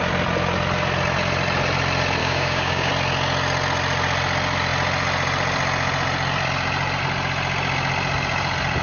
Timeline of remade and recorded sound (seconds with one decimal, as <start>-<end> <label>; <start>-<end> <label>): 0.0-2.2 recorded; 2.2-2.9 remade; 2.9-8.8 recorded